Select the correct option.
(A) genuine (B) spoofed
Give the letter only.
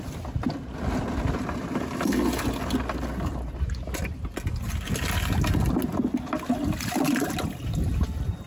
A